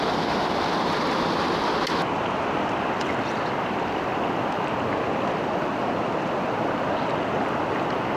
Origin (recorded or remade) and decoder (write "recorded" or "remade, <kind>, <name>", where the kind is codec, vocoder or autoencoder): recorded